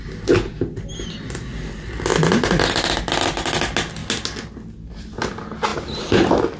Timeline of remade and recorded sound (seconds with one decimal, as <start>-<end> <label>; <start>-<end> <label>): 0.0-6.6 recorded